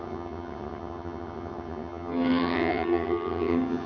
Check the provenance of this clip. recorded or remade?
remade